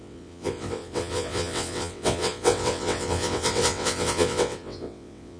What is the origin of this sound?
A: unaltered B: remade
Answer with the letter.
B